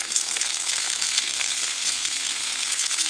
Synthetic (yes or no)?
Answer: yes